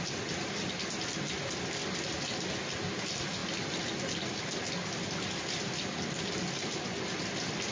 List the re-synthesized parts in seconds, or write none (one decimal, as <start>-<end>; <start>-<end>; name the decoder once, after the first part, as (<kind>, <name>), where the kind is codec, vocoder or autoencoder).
none